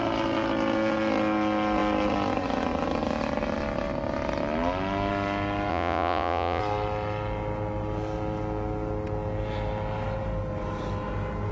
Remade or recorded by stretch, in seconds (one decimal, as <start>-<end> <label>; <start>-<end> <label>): 0.0-5.7 recorded; 5.7-6.6 remade; 6.6-11.5 recorded